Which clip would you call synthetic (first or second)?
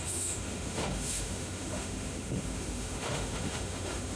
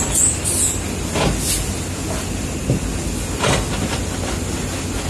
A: first